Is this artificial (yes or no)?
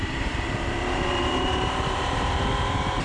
yes